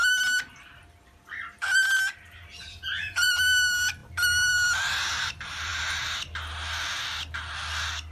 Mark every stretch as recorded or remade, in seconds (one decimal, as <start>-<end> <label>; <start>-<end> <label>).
0.0-2.7 recorded; 2.7-3.3 remade; 3.3-8.1 recorded